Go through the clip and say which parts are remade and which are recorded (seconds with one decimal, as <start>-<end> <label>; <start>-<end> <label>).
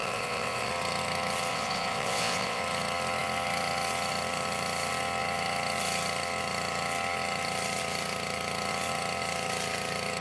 0.0-0.7 remade; 0.7-1.5 recorded; 1.5-2.6 remade; 2.6-10.2 recorded